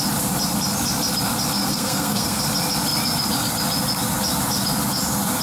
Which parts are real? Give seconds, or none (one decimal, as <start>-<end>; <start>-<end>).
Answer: 0.0-1.6; 2.4-5.4